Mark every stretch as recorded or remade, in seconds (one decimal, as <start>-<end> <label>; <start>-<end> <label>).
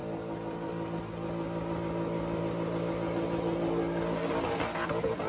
0.0-5.3 recorded